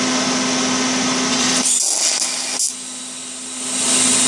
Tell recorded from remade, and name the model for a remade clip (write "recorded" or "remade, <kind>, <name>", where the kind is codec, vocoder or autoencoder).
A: recorded